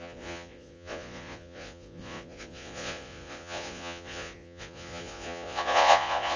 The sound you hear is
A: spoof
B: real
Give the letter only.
A